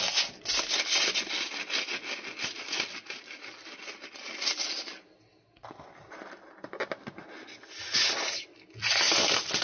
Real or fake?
real